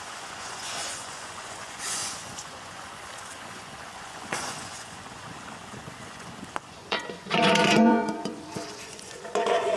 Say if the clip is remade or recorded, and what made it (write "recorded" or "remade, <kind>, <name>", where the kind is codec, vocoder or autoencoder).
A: remade, vocoder, Vocos